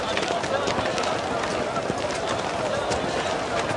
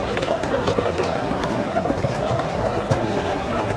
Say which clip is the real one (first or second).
first